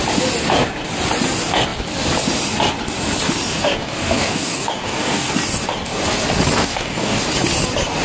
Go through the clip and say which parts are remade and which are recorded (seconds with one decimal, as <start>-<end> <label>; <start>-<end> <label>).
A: 0.0-3.5 recorded; 3.5-5.3 remade; 5.3-6.6 recorded; 6.6-7.2 remade; 7.2-8.0 recorded